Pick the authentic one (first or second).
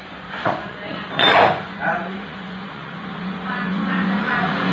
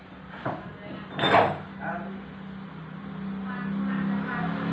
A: second